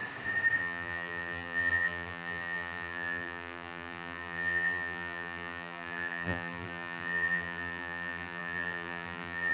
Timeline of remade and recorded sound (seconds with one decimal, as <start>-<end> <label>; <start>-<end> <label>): 0.0-0.6 recorded; 0.6-9.5 remade

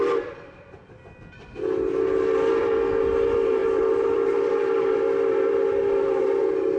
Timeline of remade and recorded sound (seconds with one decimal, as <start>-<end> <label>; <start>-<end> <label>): 0.0-0.8 remade; 0.8-2.6 recorded; 2.6-6.8 remade

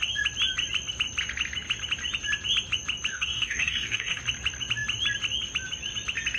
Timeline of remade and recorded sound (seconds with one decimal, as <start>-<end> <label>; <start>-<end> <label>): 0.0-3.1 recorded; 3.1-4.2 remade; 4.2-6.4 recorded

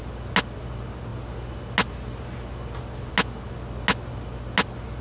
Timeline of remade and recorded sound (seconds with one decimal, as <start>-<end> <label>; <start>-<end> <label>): 0.0-5.0 recorded